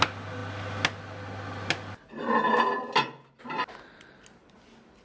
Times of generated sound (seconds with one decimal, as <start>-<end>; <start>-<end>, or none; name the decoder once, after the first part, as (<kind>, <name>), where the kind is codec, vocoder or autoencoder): none